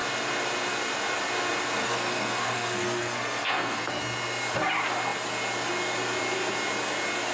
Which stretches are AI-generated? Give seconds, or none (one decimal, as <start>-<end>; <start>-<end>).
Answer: 1.8-4.0